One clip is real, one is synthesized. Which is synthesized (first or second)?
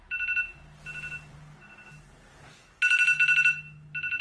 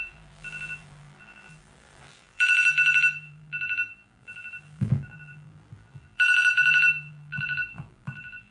second